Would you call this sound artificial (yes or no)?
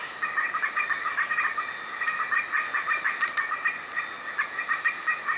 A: no